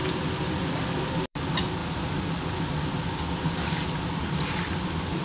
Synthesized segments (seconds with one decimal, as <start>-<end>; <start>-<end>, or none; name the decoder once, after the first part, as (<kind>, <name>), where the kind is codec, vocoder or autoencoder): 0.0-1.8 (vocoder, BigVGAN v2); 4.0-5.2